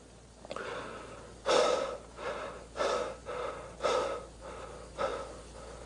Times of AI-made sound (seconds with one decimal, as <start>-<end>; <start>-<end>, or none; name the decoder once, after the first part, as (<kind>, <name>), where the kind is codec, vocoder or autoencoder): none